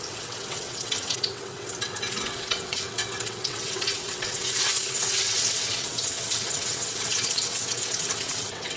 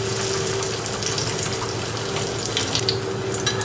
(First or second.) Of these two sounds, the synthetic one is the first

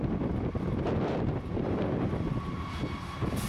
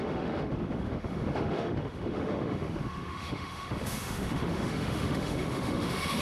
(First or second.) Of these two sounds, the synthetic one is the second